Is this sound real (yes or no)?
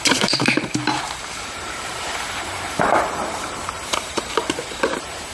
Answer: no